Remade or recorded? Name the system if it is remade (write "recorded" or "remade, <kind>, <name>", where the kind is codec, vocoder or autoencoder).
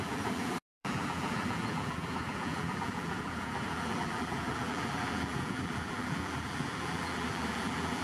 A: remade, vocoder, BigVGAN v2